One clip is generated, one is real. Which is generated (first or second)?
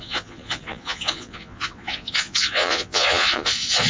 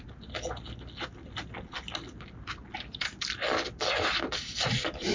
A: first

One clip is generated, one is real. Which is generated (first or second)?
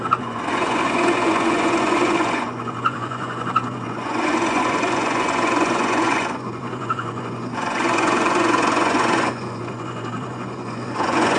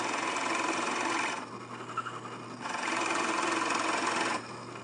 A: first